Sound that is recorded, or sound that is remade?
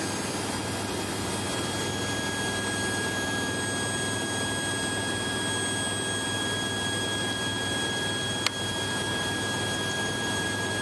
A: recorded